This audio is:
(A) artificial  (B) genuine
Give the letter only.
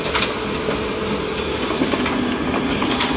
B